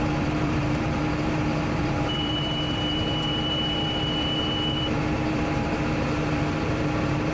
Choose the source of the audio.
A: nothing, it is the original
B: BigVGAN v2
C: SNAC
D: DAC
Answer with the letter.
B